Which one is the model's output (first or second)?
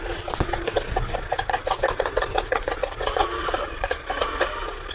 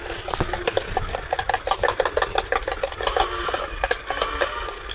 first